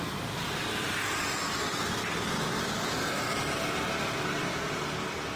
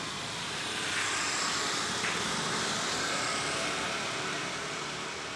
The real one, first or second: first